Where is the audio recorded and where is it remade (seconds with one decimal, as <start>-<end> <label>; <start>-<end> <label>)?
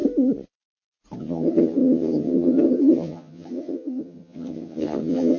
0.0-1.2 recorded; 1.2-5.4 remade